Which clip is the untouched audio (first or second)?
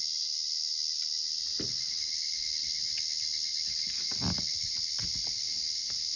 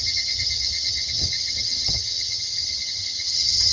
first